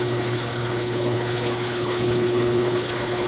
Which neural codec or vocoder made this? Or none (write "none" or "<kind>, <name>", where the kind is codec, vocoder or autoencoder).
codec, HILCodec